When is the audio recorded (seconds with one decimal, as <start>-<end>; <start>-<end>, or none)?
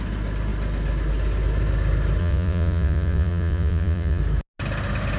0.0-2.2; 4.2-5.2